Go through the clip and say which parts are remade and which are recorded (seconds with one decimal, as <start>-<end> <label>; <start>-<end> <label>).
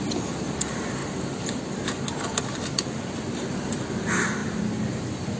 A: 0.0-5.4 remade